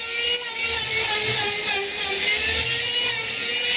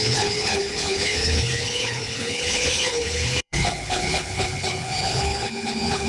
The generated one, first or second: second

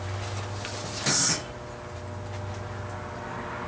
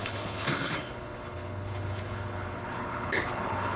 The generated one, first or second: second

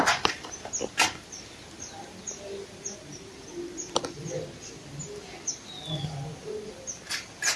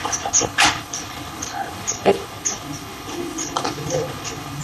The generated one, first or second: second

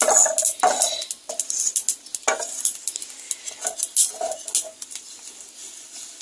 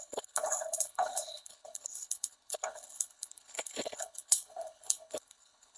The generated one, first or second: second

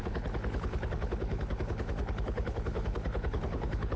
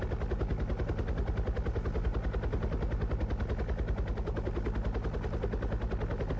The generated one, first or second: first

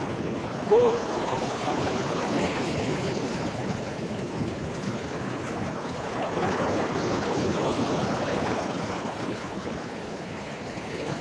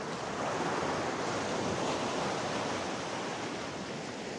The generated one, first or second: first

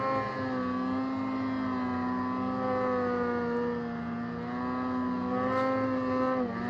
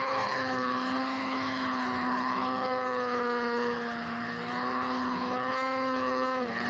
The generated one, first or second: second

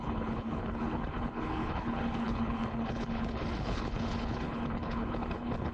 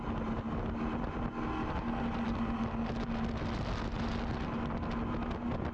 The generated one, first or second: first